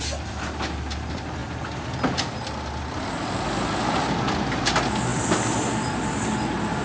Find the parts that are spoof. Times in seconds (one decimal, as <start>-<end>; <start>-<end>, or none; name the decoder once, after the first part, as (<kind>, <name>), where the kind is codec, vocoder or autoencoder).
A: none